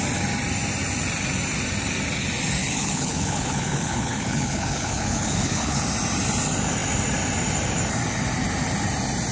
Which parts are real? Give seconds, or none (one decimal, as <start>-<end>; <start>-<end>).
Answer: 0.0-2.6; 5.8-9.3